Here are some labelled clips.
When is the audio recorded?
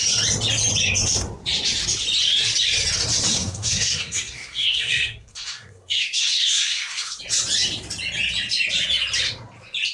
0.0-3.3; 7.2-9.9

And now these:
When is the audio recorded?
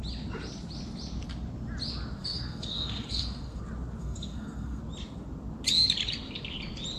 0.0-2.2; 3.6-4.0; 4.8-7.0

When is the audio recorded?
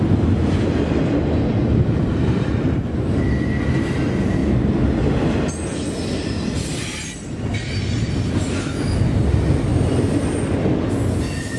0.0-1.6; 3.3-11.6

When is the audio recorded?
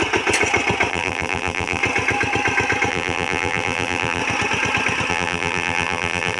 0.0-0.9; 1.8-2.9; 4.2-5.1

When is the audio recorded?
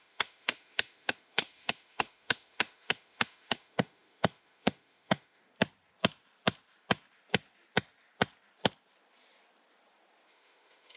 5.4-10.3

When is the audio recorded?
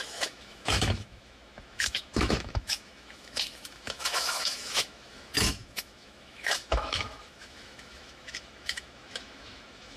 none